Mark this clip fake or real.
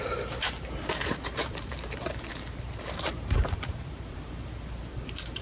fake